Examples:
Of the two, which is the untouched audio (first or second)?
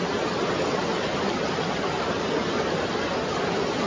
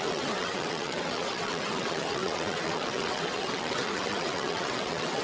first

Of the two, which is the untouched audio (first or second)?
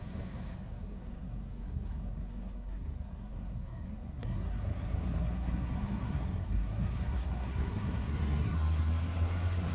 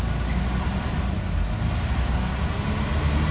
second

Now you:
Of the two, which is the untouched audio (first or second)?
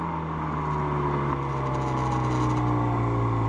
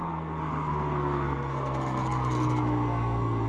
first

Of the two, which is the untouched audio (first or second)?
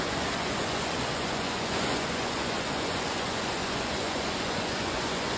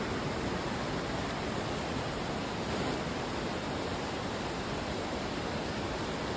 second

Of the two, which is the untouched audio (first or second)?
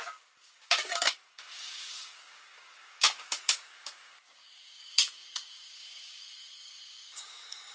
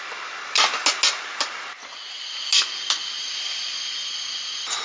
second